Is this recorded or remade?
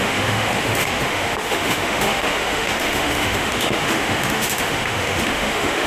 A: remade